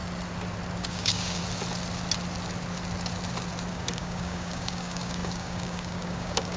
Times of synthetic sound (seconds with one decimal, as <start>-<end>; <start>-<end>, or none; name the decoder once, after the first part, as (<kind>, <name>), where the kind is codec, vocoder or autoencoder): 0.8-1.4 (codec, DAC); 3.7-6.6